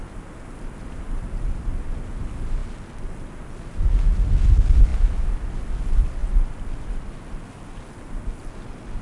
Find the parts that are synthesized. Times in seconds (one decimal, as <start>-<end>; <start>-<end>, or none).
none